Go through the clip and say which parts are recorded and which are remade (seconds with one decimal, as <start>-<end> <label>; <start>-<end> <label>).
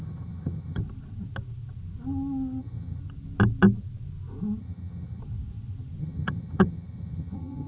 0.0-0.8 remade; 0.8-2.6 recorded; 2.6-3.0 remade; 3.0-4.6 recorded; 4.6-5.2 remade; 5.2-6.0 recorded; 6.0-7.7 remade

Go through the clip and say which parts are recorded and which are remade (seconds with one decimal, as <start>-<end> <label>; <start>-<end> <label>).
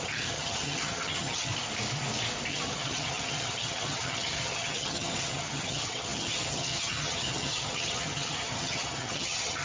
0.0-1.5 remade; 1.5-2.5 recorded; 2.5-9.6 remade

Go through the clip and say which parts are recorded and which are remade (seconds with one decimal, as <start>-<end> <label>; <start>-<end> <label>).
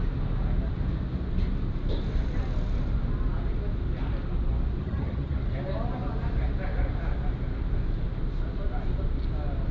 0.0-4.8 recorded; 4.8-5.4 remade; 5.4-9.7 recorded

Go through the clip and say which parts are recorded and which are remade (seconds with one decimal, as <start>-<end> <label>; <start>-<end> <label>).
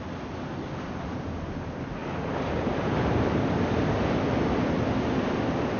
0.0-5.8 recorded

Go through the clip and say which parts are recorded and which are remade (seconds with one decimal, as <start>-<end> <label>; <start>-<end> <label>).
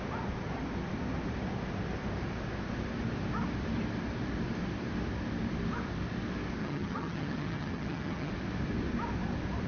0.0-6.6 recorded; 6.6-8.3 remade; 8.3-9.7 recorded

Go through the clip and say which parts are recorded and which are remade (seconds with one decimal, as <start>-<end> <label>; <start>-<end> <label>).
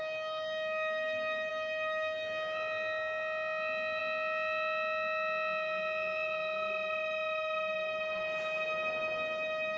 0.0-9.8 recorded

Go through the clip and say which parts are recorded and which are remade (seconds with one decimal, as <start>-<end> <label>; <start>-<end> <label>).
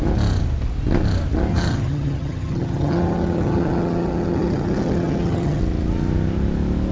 0.0-1.5 recorded; 1.5-5.6 remade; 5.6-6.9 recorded